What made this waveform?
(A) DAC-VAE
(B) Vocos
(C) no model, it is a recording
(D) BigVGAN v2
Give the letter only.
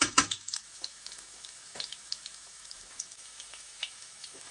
A